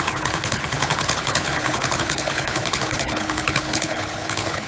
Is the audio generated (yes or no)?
yes